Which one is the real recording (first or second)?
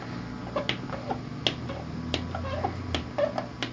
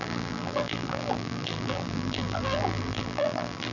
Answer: first